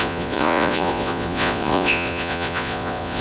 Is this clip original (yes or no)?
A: no